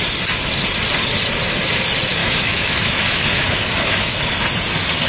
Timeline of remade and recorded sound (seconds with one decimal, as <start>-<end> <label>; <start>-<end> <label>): 0.0-2.2 recorded; 2.2-4.3 remade; 4.3-5.1 recorded